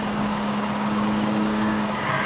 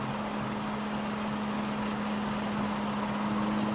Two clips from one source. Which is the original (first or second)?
second